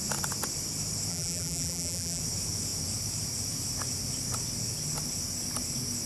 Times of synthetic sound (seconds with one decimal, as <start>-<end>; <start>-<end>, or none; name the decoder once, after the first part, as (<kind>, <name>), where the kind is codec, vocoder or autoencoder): 1.1-2.2 (vocoder, BigVGAN v2)